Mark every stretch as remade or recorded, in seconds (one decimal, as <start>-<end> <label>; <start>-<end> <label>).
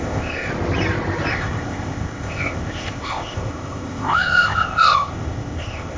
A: 0.0-0.5 remade; 0.5-1.3 recorded; 1.3-6.0 remade